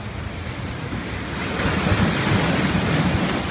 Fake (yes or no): no